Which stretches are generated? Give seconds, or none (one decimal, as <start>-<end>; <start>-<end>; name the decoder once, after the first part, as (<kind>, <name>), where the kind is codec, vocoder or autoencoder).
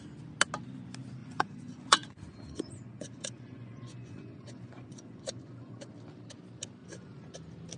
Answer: 1.2-5.9 (vocoder, Vocos); 6.8-7.3